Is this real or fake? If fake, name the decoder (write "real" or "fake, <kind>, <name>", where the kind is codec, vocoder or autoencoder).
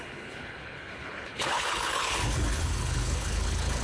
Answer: fake, codec, HILCodec